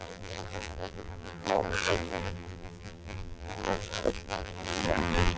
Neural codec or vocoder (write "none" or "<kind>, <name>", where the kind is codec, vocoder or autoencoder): vocoder, BigVGAN v2